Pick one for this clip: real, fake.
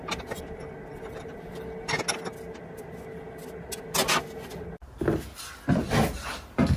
real